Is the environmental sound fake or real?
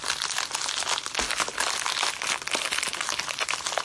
real